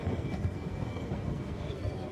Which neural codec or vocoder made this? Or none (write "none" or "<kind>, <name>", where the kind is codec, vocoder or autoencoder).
codec, SNAC